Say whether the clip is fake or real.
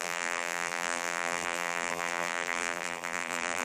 fake